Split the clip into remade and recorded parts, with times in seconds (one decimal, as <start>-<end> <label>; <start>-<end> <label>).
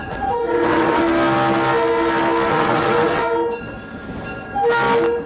0.0-1.0 remade; 1.0-2.5 recorded; 2.5-3.2 remade; 3.2-5.3 recorded